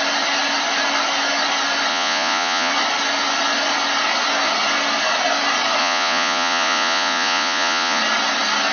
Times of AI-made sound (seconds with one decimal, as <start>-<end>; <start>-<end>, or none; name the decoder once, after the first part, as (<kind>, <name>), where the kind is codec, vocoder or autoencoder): 1.9-2.7 (vocoder, Vocos); 5.8-8.0